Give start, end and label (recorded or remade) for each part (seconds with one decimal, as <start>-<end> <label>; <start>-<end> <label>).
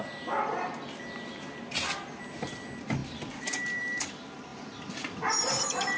0.0-6.0 recorded